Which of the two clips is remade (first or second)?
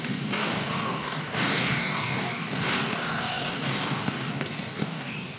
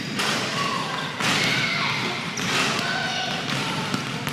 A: first